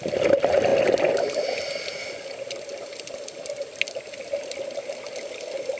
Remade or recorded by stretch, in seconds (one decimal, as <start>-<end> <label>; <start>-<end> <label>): 0.0-5.8 recorded